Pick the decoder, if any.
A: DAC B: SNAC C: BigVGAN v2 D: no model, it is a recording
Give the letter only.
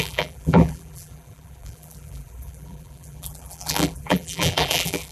C